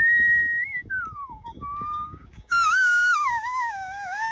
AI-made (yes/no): yes